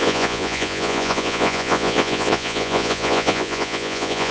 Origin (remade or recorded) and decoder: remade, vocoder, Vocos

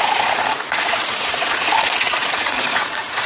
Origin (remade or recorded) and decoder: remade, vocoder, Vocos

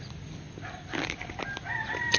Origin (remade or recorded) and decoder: recorded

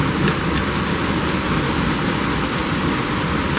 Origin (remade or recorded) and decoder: recorded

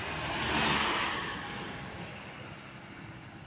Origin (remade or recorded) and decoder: recorded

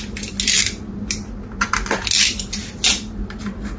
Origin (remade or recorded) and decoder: recorded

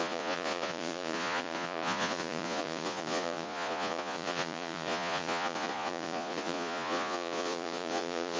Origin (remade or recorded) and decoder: remade, vocoder, Vocos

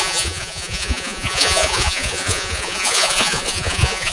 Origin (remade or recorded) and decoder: remade, vocoder, Vocos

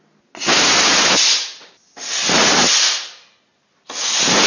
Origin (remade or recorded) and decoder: recorded